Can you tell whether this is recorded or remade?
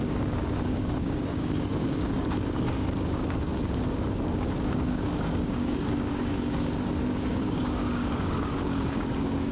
remade